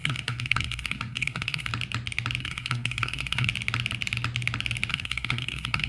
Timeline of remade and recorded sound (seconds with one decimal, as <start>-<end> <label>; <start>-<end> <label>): 0.0-1.7 remade; 1.7-2.4 recorded; 2.4-3.5 remade; 3.5-4.9 recorded; 4.9-5.9 remade